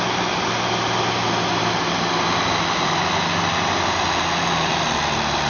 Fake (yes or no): no